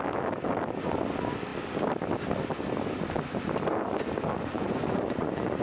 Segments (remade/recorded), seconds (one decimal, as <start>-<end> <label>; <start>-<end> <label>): 0.0-4.3 recorded; 4.3-5.6 remade